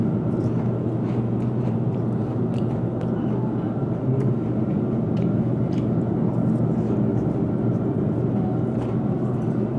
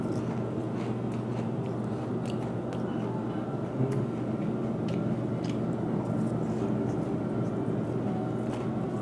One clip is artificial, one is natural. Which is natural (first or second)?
second